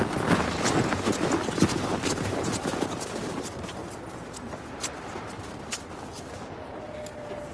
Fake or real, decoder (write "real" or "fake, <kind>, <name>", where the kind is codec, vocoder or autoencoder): real